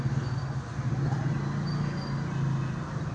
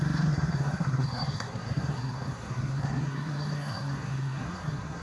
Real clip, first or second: first